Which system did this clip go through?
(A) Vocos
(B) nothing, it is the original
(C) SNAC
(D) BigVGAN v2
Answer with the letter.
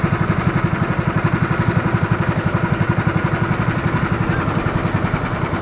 B